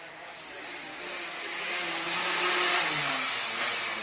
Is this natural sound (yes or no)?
yes